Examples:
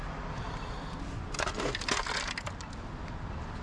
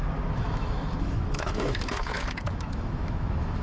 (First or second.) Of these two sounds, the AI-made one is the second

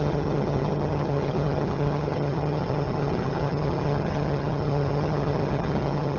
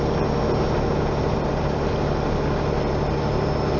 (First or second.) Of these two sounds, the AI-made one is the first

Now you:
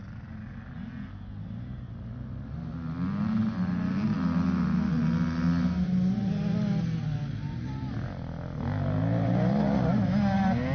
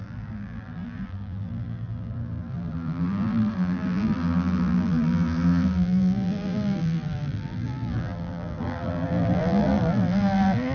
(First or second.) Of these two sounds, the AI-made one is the second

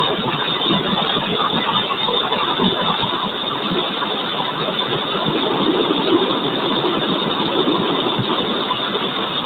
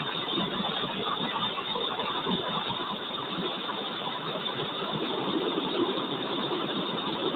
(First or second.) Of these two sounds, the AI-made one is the second